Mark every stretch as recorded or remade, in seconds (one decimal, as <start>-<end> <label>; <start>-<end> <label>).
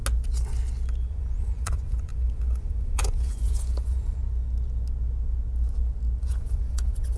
0.0-1.1 recorded; 1.1-4.2 remade; 4.2-6.2 recorded; 6.2-7.2 remade